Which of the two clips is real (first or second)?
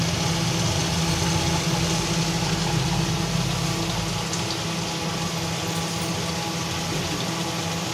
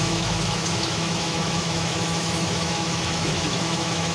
first